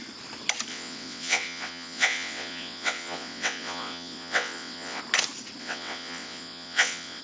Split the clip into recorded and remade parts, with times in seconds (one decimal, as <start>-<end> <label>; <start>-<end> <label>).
0.0-0.7 recorded; 0.7-5.0 remade; 5.0-5.6 recorded; 5.6-7.2 remade

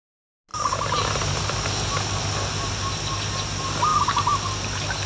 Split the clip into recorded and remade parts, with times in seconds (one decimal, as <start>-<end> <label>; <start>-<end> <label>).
0.0-5.1 recorded